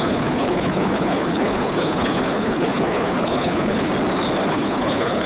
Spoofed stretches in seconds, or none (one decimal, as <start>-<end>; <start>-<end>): 0.0-3.9; 4.5-5.3